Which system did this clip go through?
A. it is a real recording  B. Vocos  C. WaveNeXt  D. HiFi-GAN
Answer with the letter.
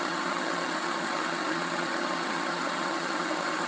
D